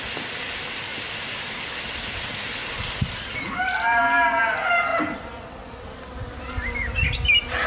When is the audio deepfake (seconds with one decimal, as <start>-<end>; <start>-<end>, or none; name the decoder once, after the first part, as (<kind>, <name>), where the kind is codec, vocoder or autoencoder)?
none